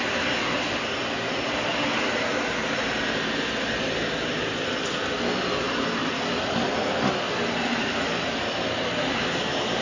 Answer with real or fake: real